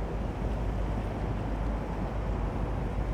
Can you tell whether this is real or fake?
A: real